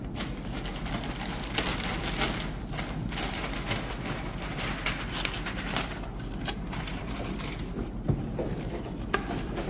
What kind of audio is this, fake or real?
real